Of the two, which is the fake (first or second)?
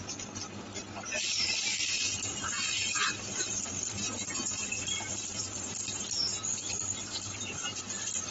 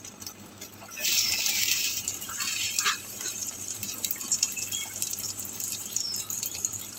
second